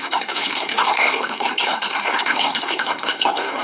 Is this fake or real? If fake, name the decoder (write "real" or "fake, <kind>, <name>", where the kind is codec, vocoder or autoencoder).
fake, codec, SNAC